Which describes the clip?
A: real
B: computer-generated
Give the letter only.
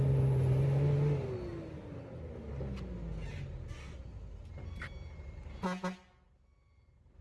A